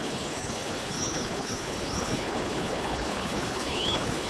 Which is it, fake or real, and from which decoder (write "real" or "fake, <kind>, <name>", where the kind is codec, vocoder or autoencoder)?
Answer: fake, codec, HILCodec